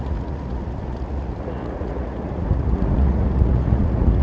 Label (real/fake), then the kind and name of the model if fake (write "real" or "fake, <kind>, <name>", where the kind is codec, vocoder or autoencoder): fake, vocoder, Vocos